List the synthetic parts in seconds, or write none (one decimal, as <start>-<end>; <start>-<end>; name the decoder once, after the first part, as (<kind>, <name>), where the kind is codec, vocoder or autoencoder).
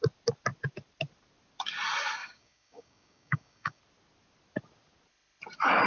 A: 2.2-3.8 (codec, DAC)